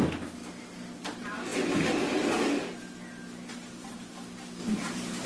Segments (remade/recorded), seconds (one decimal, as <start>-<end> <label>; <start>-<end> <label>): 0.0-4.6 recorded; 4.6-5.3 remade